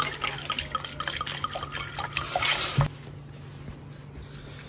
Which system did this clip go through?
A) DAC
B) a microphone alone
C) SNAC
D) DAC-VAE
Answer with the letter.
B